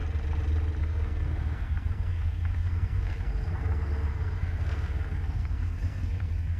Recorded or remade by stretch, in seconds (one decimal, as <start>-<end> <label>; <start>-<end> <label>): 0.0-0.8 recorded; 0.8-6.6 remade